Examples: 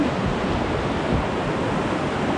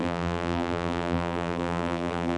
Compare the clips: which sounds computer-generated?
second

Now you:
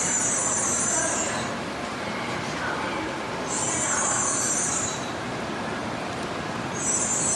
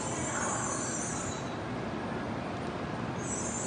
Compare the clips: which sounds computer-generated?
first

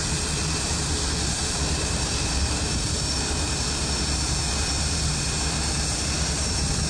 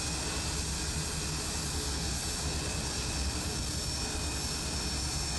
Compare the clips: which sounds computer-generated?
first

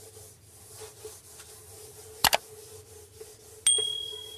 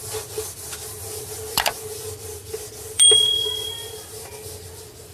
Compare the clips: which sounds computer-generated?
second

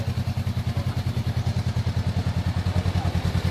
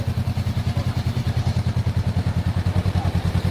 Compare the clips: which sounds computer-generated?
second